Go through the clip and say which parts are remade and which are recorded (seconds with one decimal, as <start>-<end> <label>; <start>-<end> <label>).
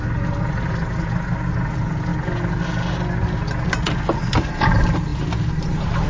0.0-6.1 recorded